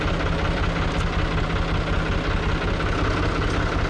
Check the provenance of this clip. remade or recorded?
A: recorded